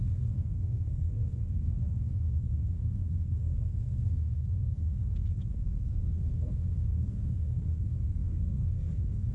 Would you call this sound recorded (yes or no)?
no